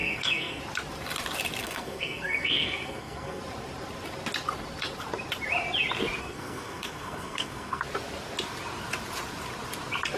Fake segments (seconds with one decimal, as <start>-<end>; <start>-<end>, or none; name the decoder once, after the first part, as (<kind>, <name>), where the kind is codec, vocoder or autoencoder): 0.0-0.6 (codec, SNAC); 1.6-3.4; 6.2-7.8